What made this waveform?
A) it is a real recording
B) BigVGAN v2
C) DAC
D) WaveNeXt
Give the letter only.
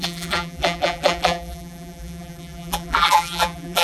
B